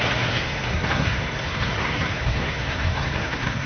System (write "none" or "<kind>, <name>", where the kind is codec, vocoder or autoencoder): codec, SNAC